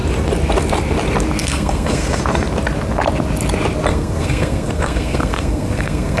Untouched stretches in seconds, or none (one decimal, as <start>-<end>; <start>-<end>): 0.0-1.4; 2.2-3.9